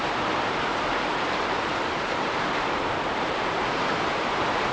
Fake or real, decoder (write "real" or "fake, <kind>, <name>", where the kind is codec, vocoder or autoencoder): fake, vocoder, BigVGAN v2